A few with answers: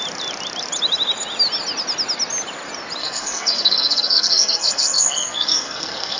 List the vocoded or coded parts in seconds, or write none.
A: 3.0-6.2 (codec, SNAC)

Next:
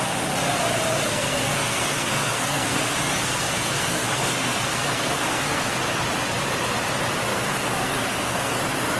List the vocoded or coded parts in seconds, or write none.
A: 1.1-5.8 (codec, SNAC); 7.3-8.6

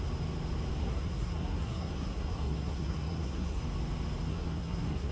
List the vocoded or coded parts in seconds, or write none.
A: 0.8-3.6 (codec, SNAC); 4.3-5.1